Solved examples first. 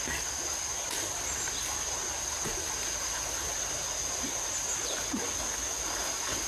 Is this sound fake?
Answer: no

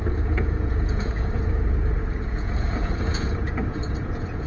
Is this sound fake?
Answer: yes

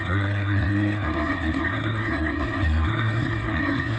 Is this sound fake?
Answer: yes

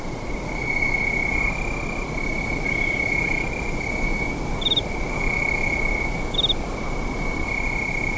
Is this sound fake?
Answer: no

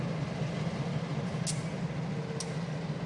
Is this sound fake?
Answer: no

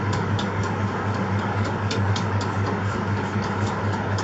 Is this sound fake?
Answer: yes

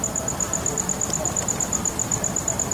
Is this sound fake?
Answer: yes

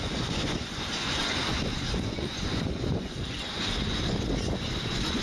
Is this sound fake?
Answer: yes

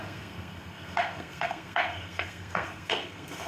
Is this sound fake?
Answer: yes